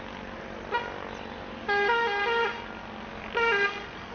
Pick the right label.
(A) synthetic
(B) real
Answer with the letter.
B